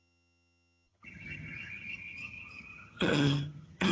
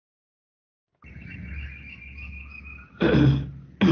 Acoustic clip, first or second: second